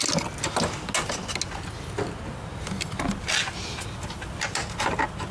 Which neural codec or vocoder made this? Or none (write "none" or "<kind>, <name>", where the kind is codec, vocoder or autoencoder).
none